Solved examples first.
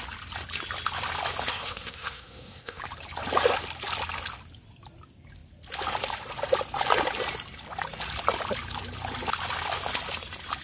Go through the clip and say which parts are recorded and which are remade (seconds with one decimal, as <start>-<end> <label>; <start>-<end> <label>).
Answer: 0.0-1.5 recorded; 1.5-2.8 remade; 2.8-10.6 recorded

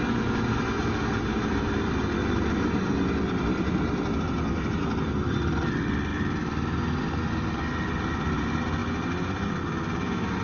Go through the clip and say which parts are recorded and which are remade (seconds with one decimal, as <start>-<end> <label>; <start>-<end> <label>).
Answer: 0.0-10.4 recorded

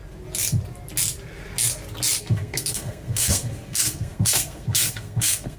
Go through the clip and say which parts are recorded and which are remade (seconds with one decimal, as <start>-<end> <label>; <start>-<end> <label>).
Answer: 0.0-2.2 recorded; 2.2-5.6 remade